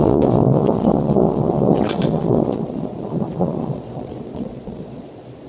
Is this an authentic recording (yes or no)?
no